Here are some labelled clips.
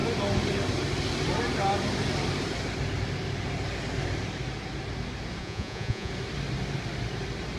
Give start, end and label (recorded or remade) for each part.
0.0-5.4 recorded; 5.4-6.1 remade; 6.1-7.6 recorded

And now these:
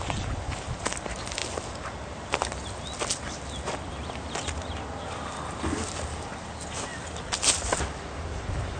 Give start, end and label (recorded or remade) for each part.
0.0-8.8 recorded

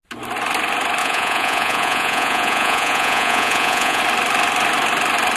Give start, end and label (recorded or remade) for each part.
0.0-1.0 recorded; 1.0-4.0 remade; 4.0-5.4 recorded

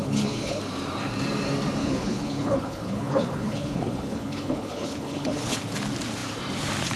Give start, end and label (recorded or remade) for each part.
0.0-0.6 remade; 0.6-1.8 recorded; 1.8-5.6 remade; 5.6-7.0 recorded

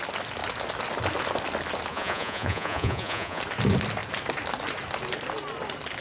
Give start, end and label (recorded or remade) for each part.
0.0-1.9 recorded; 1.9-3.4 remade; 3.4-6.0 recorded